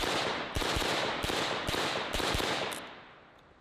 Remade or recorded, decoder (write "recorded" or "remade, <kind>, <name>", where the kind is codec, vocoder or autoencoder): recorded